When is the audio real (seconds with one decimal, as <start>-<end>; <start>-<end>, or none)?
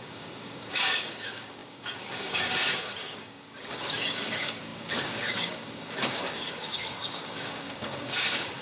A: none